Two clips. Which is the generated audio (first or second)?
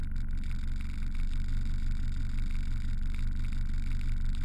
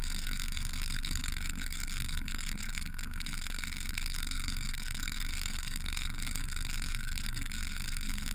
second